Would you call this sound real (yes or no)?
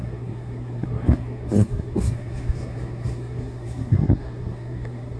no